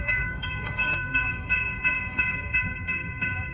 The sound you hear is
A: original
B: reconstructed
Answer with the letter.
B